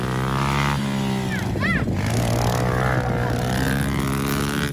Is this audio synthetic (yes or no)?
no